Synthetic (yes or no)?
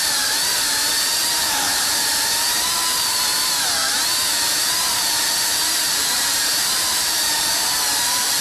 yes